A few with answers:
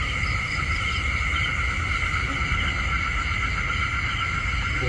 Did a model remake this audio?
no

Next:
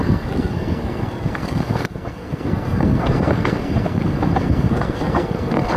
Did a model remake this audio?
yes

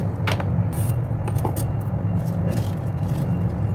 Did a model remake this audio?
no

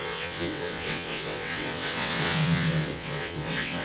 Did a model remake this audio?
yes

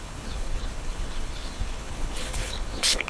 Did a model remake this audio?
yes